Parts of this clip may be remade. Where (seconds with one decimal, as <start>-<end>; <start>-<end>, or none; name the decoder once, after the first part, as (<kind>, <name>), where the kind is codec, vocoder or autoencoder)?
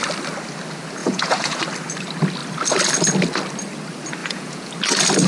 1.0-1.6 (vocoder, Vocos); 4.2-4.7